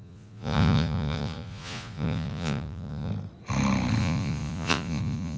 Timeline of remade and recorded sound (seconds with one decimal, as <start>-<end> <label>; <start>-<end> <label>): 0.0-3.1 remade; 3.1-4.0 recorded; 4.0-5.4 remade